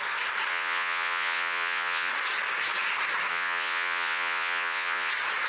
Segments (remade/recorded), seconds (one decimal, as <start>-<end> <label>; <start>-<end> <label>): 0.0-0.5 recorded; 0.5-2.1 remade; 2.1-3.3 recorded; 3.3-5.1 remade; 5.1-5.5 recorded